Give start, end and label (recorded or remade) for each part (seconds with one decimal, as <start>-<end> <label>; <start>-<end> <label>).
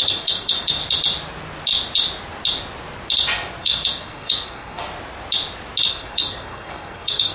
0.0-0.8 remade; 0.8-3.6 recorded; 3.6-4.8 remade; 4.8-5.9 recorded; 5.9-7.3 remade